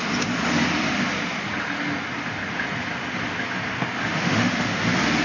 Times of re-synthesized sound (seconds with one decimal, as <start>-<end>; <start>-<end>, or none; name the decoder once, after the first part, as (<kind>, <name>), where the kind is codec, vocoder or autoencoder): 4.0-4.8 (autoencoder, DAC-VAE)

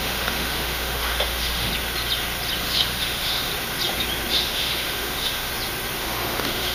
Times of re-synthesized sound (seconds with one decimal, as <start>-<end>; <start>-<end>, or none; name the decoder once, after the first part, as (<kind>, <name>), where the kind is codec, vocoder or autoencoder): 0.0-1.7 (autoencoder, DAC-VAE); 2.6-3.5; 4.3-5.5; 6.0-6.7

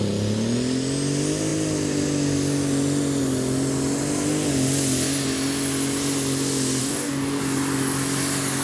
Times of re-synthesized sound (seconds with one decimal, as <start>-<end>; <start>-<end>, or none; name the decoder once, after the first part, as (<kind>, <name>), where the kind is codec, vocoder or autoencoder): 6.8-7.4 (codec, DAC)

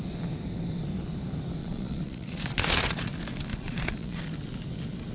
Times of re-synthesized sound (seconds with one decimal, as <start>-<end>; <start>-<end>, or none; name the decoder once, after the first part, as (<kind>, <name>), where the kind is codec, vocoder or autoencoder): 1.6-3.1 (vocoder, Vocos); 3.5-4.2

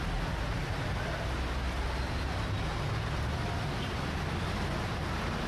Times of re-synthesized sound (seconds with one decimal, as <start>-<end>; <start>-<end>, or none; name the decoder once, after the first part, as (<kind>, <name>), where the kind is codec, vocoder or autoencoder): none

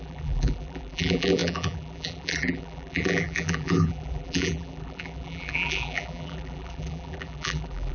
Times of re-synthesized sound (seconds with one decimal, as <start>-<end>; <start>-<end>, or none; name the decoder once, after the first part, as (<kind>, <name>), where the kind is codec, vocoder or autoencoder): 0.0-7.9 (vocoder, BigVGAN v2)

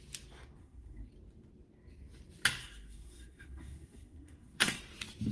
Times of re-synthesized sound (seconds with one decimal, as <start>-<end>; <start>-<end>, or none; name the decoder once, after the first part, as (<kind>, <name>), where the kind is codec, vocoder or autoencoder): 0.6-1.1 (codec, SNAC); 2.6-4.8